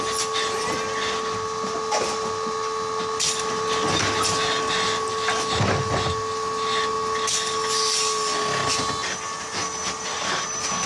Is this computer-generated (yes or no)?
no